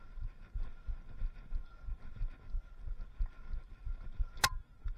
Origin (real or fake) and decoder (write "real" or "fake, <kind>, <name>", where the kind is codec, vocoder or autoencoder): real